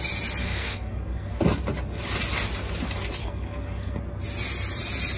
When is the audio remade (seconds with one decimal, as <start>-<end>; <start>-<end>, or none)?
0.4-1.4; 3.2-4.0